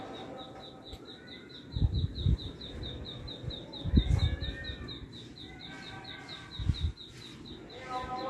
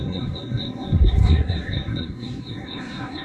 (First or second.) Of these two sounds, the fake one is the second